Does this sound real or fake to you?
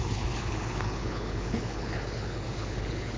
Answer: fake